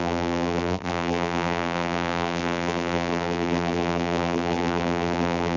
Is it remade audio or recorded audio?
remade